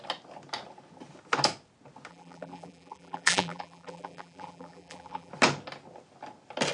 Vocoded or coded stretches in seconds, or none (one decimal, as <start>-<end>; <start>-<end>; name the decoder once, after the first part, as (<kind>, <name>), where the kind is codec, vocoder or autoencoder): 2.1-5.3 (vocoder, BigVGAN v2)